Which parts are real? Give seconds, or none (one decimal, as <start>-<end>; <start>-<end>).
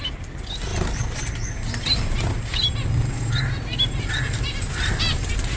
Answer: 0.0-5.6